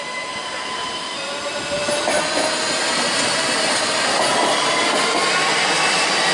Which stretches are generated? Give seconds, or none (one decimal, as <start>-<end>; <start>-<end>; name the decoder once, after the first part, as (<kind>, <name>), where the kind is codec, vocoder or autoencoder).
none